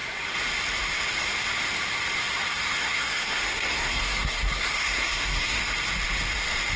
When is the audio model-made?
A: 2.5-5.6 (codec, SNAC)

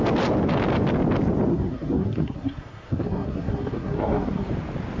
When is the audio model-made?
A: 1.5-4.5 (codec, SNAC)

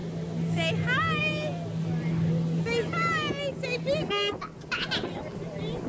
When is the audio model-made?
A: none

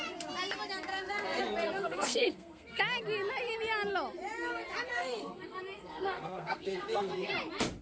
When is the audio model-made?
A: 0.9-1.4 (codec, SNAC); 1.8-2.8; 4.9-7.3